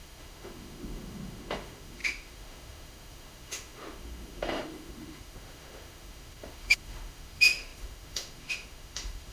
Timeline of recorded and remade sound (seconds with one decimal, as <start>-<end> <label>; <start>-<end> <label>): 0.0-9.3 remade